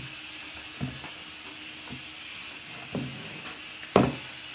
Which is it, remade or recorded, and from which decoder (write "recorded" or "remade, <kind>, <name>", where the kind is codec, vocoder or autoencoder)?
recorded